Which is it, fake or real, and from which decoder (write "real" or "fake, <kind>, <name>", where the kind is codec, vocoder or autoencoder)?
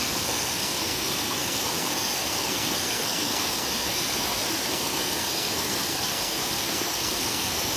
fake, codec, SNAC